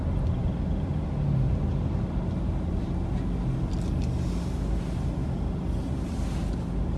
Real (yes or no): yes